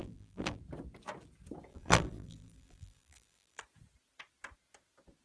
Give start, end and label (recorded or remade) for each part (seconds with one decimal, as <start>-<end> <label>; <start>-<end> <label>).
0.0-0.6 remade; 0.6-1.7 recorded; 1.7-3.6 remade; 3.6-5.2 recorded